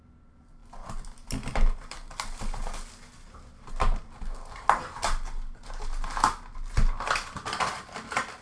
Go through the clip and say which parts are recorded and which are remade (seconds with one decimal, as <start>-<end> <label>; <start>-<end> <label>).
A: 0.0-8.4 recorded